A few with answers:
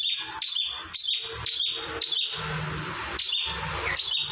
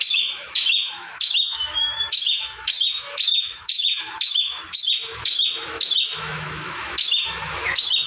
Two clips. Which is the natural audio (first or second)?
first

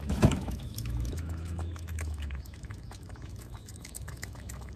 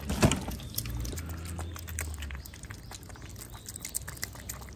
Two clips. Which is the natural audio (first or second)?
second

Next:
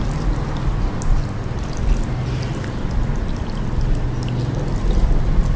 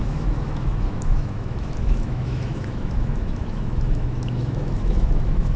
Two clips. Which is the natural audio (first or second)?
first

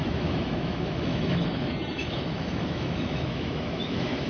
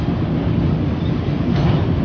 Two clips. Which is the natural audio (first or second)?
second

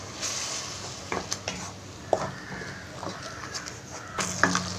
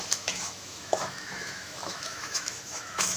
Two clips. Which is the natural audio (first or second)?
first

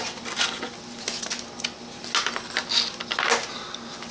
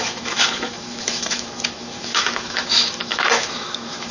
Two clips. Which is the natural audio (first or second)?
first